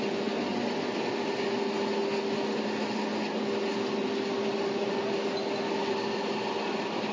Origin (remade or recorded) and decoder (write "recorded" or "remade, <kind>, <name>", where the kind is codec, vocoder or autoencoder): recorded